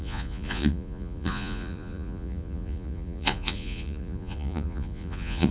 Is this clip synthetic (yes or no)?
yes